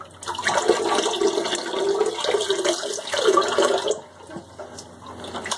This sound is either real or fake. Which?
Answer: real